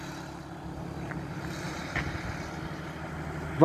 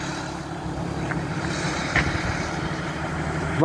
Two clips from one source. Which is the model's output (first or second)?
second